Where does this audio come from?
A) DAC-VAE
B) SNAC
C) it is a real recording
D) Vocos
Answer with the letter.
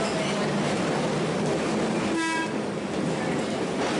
C